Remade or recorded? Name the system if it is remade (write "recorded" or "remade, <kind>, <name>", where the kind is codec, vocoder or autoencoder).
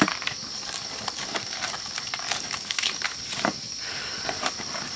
remade, codec, DAC